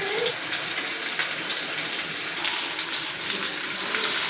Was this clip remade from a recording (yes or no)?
no